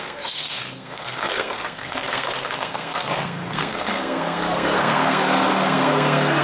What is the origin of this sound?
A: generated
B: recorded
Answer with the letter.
A